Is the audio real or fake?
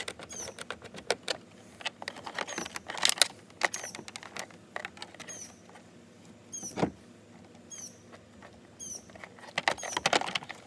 real